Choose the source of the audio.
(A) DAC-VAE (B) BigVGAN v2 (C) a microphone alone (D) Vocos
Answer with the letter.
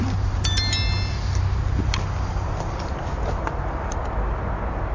C